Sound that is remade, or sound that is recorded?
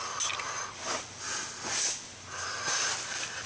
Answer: recorded